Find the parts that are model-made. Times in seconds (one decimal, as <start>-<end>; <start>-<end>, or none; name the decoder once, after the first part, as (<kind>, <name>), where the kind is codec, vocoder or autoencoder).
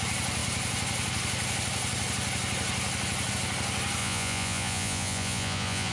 4.0-5.9 (vocoder, Vocos)